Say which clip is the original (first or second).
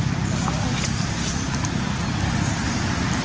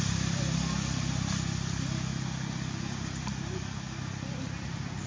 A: second